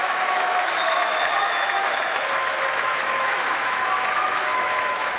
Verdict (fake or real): fake